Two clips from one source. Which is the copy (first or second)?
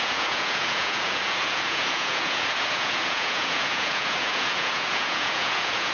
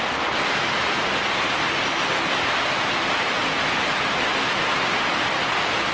first